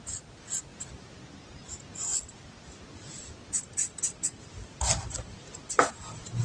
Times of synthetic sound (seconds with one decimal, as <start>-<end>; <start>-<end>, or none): none